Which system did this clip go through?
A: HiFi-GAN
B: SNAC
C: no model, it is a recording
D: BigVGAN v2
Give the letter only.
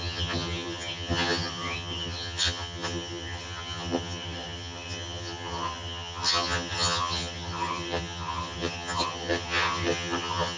A